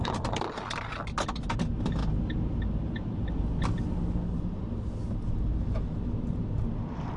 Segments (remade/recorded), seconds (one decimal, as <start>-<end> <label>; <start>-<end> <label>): 0.0-7.2 recorded